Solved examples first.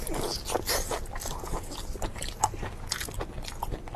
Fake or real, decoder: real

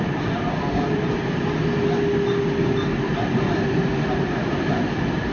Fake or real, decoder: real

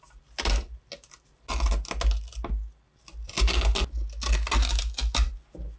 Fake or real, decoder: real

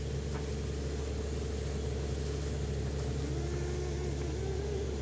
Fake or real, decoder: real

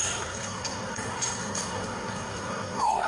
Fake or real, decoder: fake, codec, SNAC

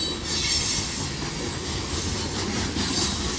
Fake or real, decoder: real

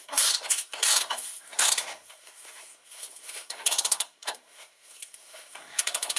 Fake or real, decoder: fake, codec, SNAC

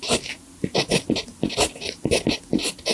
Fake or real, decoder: real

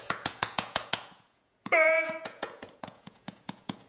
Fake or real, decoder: fake, vocoder, Vocos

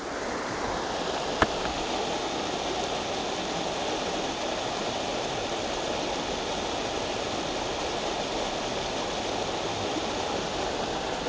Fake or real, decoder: real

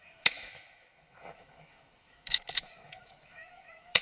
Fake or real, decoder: fake, autoencoder, DAC-VAE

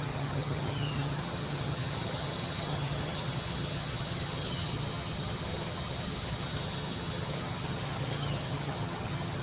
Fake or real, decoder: fake, vocoder, HiFi-GAN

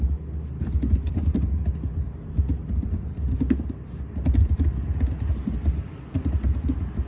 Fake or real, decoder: real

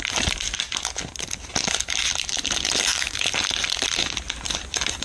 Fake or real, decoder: fake, vocoder, BigVGAN v2